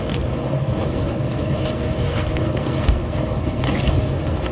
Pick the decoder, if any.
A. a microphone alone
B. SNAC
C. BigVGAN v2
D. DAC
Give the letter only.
B